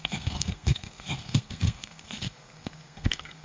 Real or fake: fake